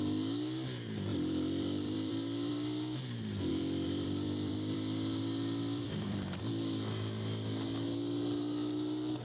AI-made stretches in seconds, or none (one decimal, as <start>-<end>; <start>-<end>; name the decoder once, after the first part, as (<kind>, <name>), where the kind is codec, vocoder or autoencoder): 1.1-2.5 (vocoder, BigVGAN v2); 3.5-6.4